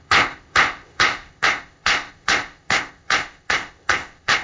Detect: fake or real fake